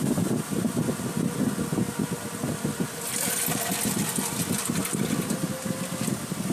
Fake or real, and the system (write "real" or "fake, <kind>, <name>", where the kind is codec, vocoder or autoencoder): real